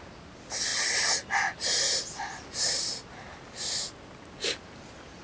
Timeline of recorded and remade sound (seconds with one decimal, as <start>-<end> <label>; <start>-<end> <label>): 0.0-5.2 recorded